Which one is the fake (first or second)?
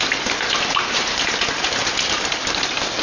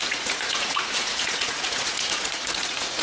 second